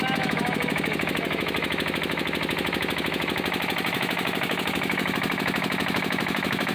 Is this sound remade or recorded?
remade